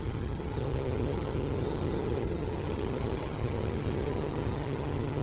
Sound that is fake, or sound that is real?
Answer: fake